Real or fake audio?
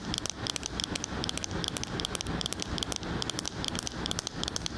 real